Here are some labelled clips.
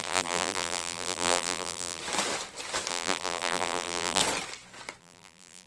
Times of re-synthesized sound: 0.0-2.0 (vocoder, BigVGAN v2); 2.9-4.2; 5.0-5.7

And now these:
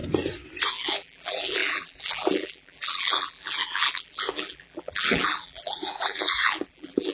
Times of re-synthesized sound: 0.7-7.1 (vocoder, BigVGAN v2)

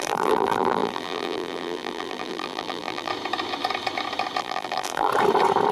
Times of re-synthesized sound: 0.0-3.1 (vocoder, BigVGAN v2); 4.4-5.1